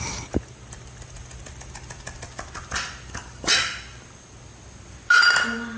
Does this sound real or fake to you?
real